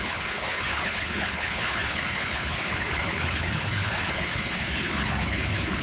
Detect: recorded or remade remade